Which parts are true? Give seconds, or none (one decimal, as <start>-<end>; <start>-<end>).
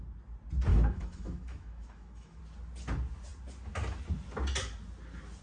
0.0-0.7; 2.4-5.4